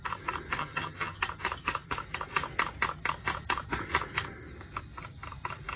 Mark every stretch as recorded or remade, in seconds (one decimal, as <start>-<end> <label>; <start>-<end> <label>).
0.0-0.6 recorded; 0.6-1.2 remade; 1.2-5.8 recorded

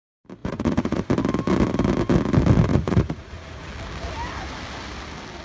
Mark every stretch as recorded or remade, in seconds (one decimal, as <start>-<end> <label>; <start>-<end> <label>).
0.0-0.4 recorded; 0.4-1.0 remade; 1.0-2.7 recorded; 2.7-3.7 remade; 3.7-5.4 recorded

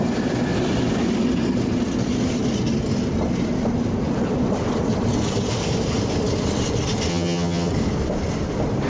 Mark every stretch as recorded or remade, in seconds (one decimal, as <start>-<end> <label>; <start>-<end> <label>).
0.0-7.1 recorded; 7.1-7.7 remade; 7.7-8.9 recorded

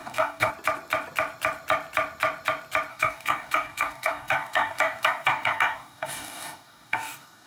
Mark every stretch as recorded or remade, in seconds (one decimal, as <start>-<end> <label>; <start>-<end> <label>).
0.0-0.5 remade; 0.5-2.9 recorded; 2.9-7.5 remade

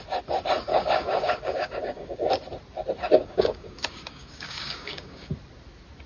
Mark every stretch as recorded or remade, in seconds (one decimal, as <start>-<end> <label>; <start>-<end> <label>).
0.0-0.7 recorded; 0.7-2.3 remade; 2.3-3.2 recorded; 3.2-5.3 remade; 5.3-6.1 recorded